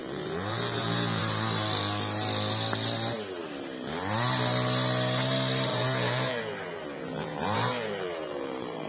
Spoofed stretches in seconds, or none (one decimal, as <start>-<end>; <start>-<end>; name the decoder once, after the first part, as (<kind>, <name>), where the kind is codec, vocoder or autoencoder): 0.0-1.2 (vocoder, BigVGAN v2); 5.7-8.9